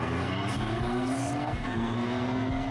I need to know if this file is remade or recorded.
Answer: remade